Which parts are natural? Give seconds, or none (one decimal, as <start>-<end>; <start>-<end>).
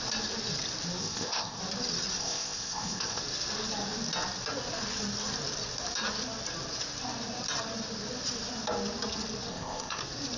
0.0-1.0; 1.6-2.2; 3.2-9.5; 10.0-10.4